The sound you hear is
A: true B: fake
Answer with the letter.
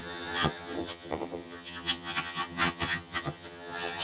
B